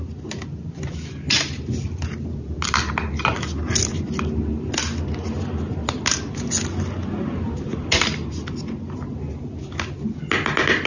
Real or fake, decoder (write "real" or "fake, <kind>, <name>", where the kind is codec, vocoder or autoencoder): real